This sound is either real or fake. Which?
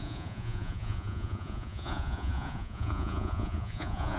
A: fake